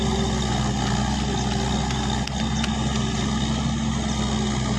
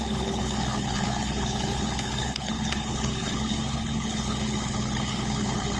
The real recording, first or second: first